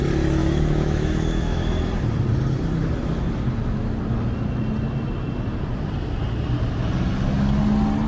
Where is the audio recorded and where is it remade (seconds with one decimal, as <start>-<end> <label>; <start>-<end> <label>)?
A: 0.0-0.4 recorded; 0.4-1.8 remade; 1.8-8.1 recorded